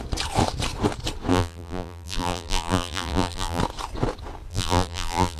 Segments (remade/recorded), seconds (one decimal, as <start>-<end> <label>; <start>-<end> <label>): 0.0-1.3 recorded; 1.3-3.6 remade; 3.6-4.5 recorded; 4.5-5.4 remade